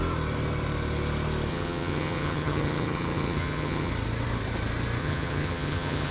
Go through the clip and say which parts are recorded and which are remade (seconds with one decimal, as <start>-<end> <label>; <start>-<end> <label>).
0.0-1.5 recorded; 1.5-3.9 remade; 3.9-5.0 recorded; 5.0-6.1 remade